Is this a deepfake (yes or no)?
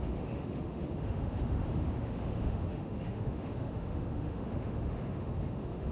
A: yes